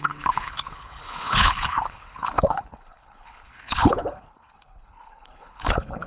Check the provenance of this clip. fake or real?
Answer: fake